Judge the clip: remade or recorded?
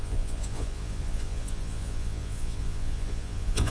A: remade